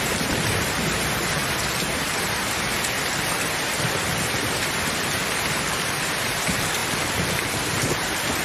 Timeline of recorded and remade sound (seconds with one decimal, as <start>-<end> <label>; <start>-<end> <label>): 0.0-1.4 remade; 1.4-5.0 recorded; 5.0-8.4 remade